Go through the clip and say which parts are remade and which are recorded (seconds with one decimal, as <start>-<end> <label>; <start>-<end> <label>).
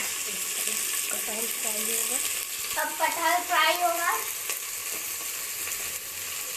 0.0-6.6 recorded